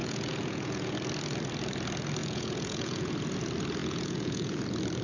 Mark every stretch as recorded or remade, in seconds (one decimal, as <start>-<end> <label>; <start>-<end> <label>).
0.0-0.9 remade; 0.9-2.2 recorded; 2.2-3.1 remade; 3.1-3.8 recorded; 3.8-4.6 remade; 4.6-5.0 recorded